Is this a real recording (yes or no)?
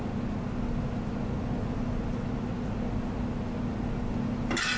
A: yes